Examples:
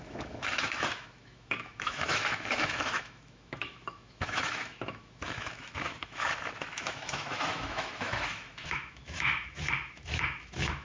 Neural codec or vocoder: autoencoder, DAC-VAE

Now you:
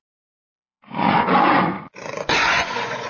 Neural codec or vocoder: vocoder, Vocos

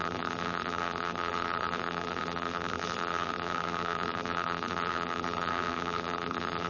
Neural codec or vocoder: vocoder, BigVGAN v2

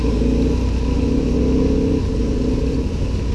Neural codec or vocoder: none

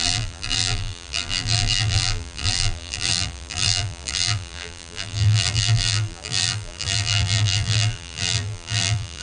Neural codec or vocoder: vocoder, BigVGAN v2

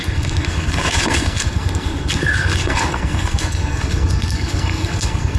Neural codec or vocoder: codec, SNAC